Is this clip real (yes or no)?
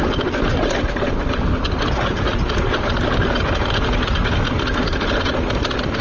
yes